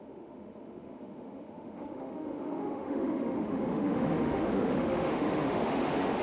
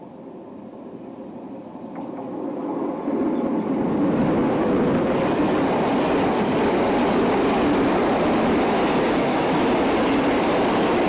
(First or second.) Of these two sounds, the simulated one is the first